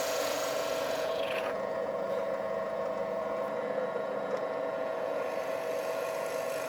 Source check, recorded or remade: remade